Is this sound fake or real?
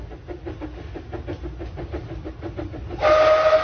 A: real